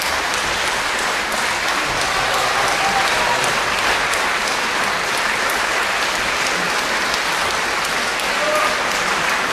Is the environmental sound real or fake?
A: real